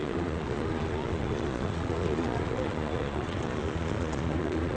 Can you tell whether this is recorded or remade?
remade